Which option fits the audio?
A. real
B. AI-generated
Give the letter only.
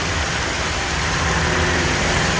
A